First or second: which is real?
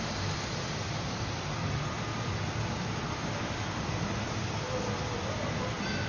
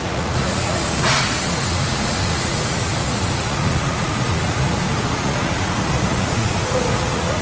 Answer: first